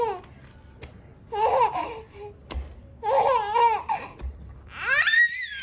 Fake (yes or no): no